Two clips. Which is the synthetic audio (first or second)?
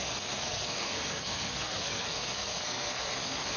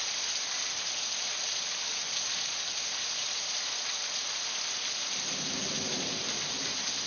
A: first